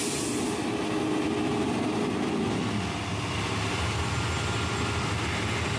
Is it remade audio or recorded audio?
recorded